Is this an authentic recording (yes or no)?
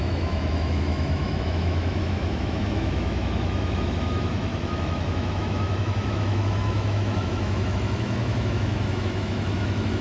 no